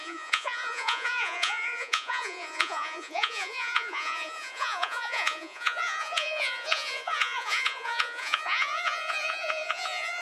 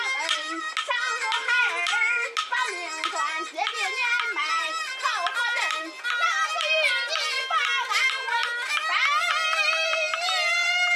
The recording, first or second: second